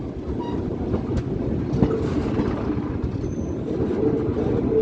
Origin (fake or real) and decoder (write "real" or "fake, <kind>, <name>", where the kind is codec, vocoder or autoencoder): real